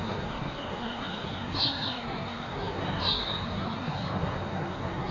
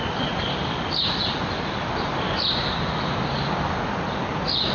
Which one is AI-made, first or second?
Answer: first